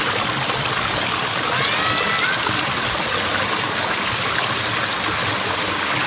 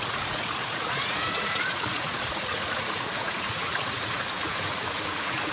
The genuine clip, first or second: first